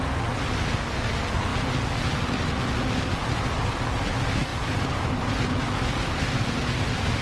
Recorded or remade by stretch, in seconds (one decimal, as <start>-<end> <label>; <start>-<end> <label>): 0.0-4.5 recorded; 4.5-5.5 remade; 5.5-7.2 recorded